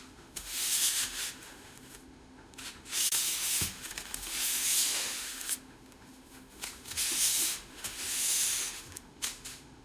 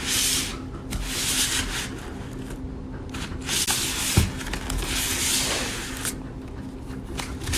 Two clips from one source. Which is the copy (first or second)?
first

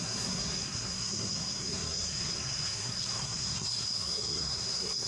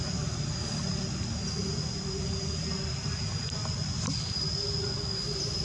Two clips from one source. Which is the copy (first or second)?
first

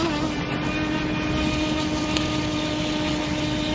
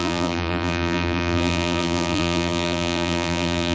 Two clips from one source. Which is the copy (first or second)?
second